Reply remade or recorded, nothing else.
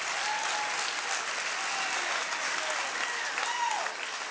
recorded